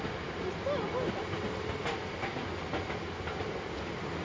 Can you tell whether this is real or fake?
real